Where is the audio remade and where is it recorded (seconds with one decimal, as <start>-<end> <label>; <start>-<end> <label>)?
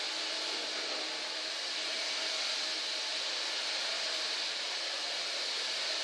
0.0-6.0 recorded